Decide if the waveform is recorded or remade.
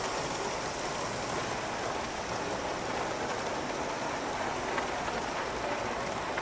recorded